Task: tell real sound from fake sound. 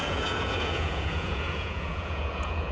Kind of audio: fake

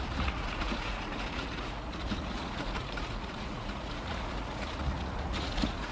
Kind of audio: fake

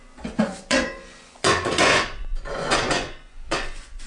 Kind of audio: fake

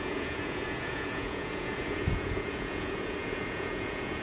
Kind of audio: fake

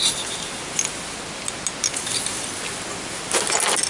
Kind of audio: real